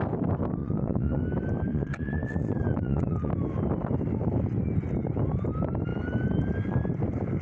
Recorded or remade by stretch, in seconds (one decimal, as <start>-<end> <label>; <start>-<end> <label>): 0.0-0.6 recorded; 0.6-1.2 remade; 1.2-1.7 recorded; 1.7-3.3 remade; 3.3-7.4 recorded